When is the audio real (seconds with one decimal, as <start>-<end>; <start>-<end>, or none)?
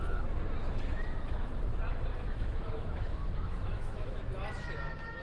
0.0-0.6; 1.5-2.1; 4.2-5.2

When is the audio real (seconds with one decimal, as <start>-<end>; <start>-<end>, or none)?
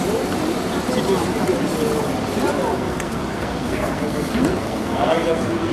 0.0-2.7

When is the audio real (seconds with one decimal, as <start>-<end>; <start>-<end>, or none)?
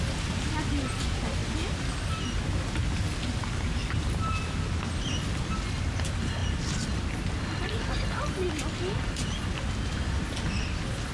0.0-3.8; 4.4-11.1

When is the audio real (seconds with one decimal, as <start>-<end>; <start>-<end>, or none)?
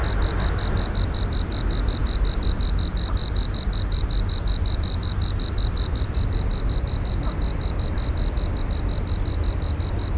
0.0-10.2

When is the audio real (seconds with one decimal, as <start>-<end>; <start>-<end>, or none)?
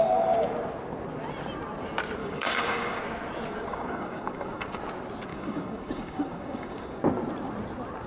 0.0-2.2; 3.0-3.7; 4.8-5.3; 7.0-8.1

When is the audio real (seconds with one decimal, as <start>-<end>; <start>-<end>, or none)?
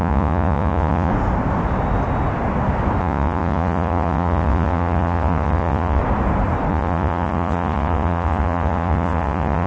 1.1-3.0; 6.0-6.7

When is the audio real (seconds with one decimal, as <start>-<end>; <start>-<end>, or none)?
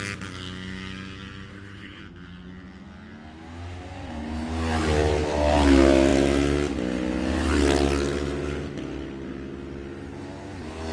0.0-1.5; 2.0-10.9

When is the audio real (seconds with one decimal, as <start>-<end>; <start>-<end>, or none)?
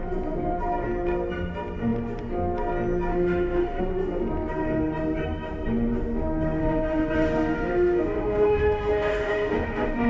0.0-3.1; 3.8-6.6